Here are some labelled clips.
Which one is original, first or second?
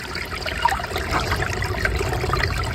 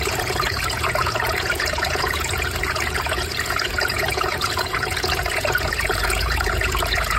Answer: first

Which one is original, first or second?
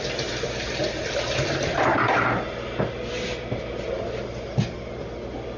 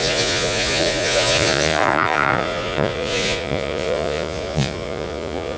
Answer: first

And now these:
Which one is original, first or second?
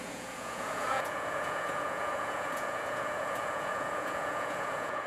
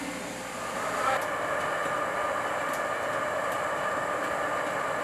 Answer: second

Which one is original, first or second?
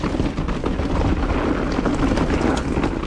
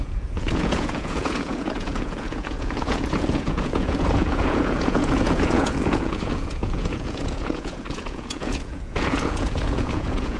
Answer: first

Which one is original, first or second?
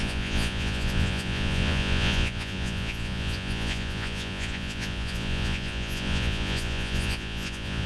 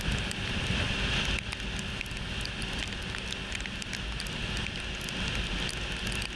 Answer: second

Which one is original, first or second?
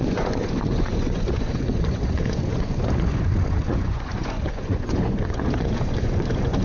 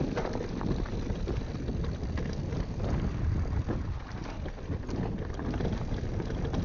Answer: second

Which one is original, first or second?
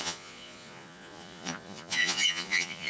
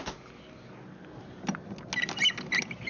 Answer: second